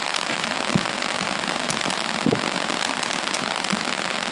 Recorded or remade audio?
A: recorded